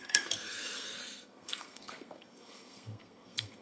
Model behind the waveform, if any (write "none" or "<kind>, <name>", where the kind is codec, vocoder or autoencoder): codec, SNAC